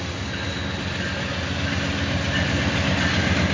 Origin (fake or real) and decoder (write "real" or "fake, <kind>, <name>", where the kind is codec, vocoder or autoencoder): real